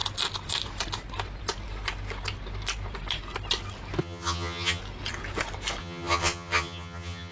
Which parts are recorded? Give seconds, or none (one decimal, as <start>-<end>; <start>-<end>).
0.0-4.0; 4.8-5.8